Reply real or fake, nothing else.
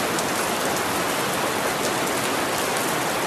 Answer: real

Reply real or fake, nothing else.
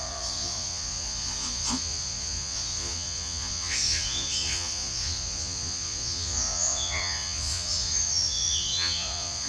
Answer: fake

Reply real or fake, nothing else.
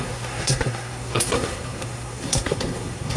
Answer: fake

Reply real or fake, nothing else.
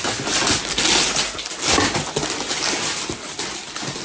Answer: real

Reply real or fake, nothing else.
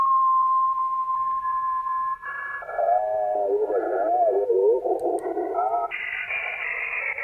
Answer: real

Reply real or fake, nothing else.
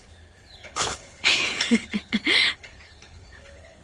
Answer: fake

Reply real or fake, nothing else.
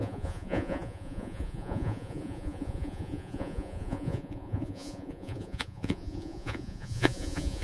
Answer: fake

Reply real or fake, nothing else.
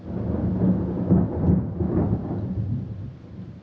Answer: real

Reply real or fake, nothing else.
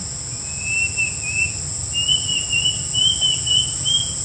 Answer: real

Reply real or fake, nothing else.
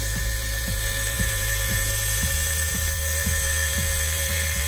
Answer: fake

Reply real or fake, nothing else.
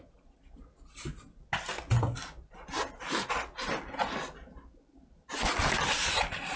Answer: real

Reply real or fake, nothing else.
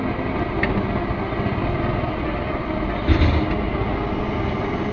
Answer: real